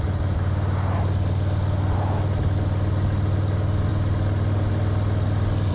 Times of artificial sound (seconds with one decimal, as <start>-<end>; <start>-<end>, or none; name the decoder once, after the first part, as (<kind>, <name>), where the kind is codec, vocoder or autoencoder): none